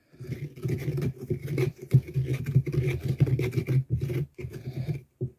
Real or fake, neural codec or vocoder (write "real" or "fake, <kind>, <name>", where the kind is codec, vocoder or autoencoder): real